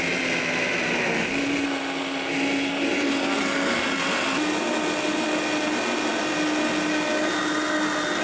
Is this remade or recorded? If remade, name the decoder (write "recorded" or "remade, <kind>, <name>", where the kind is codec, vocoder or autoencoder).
recorded